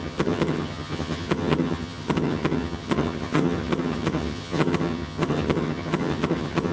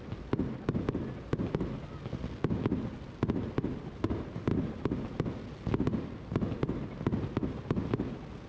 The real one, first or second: second